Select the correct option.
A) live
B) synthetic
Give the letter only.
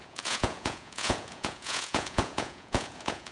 B